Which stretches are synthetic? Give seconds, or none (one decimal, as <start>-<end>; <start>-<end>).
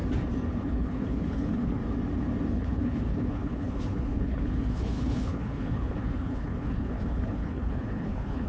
0.6-1.8; 2.5-8.5